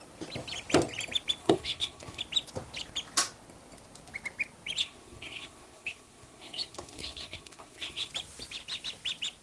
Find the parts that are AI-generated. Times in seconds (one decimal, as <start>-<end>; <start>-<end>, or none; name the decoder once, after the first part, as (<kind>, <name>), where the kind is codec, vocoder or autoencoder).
1.4-2.2 (codec, SNAC); 4.8-8.1